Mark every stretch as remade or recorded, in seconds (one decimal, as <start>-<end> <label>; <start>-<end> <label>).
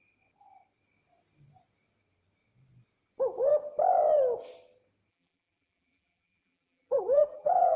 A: 0.0-5.1 recorded; 5.1-7.8 remade